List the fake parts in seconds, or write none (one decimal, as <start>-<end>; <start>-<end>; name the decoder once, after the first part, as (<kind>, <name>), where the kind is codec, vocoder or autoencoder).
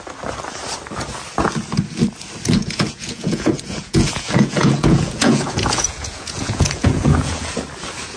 2.6-7.5 (vocoder, Vocos)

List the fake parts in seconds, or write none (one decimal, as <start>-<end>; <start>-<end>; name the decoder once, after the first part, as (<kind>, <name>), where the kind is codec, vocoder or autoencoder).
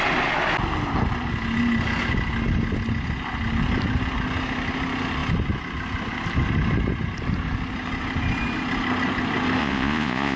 9.6-10.4 (vocoder, Vocos)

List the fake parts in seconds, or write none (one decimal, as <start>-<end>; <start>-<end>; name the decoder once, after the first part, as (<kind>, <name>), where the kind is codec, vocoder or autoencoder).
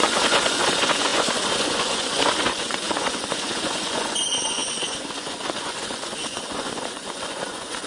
0.0-7.9 (vocoder, Vocos)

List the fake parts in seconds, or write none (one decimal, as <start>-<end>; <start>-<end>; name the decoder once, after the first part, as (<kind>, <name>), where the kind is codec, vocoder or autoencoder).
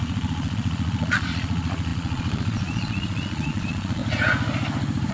0.0-4.0 (vocoder, Vocos)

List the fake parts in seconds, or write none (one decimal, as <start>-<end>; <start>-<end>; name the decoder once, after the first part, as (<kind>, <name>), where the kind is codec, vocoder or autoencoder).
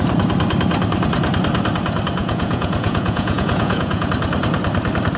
2.2-4.1 (vocoder, Vocos)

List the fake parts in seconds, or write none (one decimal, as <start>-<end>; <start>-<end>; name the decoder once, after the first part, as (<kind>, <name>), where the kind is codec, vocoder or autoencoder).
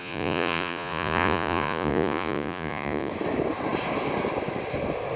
0.0-3.1 (vocoder, Vocos)